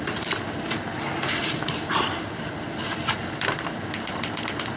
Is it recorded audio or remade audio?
recorded